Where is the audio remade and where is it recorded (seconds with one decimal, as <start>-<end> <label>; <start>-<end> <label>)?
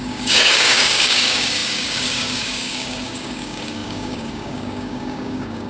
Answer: 0.0-5.7 remade